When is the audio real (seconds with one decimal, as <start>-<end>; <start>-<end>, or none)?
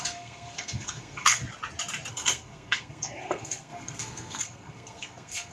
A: 1.4-2.1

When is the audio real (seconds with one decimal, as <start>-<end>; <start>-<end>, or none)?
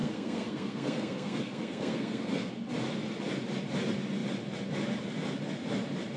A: 2.5-6.2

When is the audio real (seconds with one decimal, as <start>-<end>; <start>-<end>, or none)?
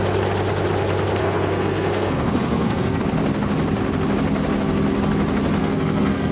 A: 0.0-1.2; 3.0-5.6